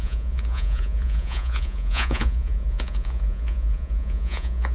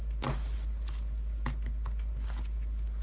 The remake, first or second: first